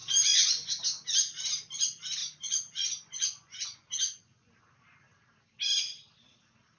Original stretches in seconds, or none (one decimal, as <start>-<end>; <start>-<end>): 0.8-2.2; 4.5-6.8